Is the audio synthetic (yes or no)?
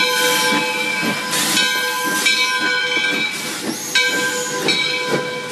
no